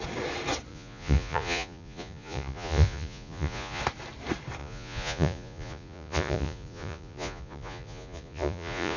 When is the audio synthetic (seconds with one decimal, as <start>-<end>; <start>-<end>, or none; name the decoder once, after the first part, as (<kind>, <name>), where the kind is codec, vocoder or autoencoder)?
0.7-3.8 (vocoder, Vocos); 4.6-9.0